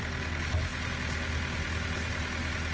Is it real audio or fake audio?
real